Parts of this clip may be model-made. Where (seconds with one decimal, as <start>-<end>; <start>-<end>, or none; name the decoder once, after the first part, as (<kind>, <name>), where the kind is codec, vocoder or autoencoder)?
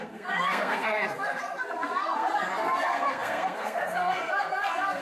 0.0-5.0 (codec, SNAC)